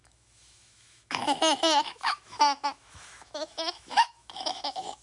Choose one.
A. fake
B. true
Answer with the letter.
A